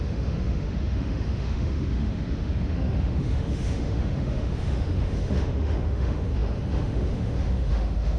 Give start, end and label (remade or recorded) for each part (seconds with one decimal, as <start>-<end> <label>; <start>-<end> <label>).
0.0-8.2 remade